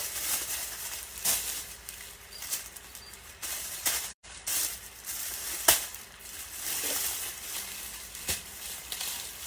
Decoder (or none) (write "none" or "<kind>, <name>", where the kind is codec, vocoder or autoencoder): vocoder, BigVGAN v2